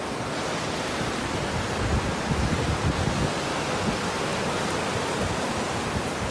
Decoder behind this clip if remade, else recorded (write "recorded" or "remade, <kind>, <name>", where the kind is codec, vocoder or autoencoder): recorded